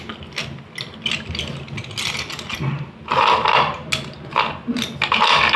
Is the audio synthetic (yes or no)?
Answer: no